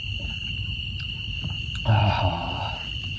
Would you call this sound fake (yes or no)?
yes